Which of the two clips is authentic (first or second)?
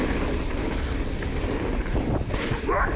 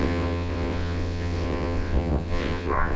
first